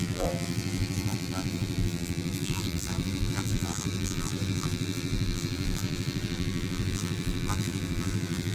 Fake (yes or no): yes